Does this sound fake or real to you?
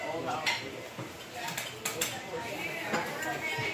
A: real